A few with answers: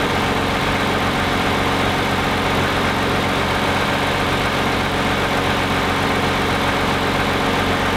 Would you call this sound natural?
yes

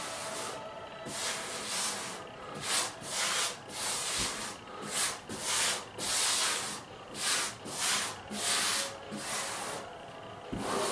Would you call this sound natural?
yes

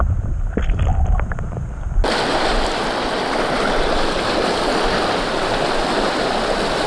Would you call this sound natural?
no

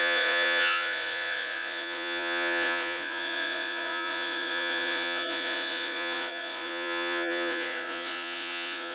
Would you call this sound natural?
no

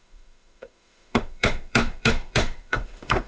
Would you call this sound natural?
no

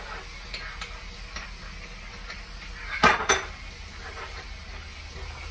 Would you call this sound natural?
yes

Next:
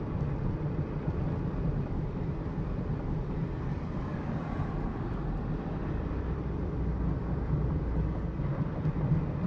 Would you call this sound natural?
no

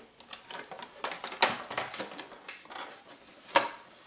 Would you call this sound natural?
yes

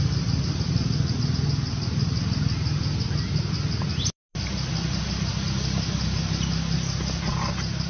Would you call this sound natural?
yes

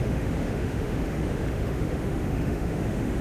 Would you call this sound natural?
no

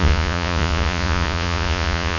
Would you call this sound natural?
no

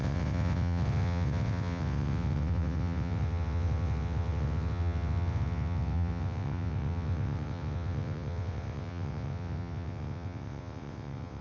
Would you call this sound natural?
no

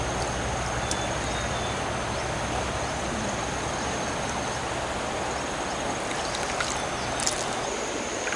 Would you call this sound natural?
yes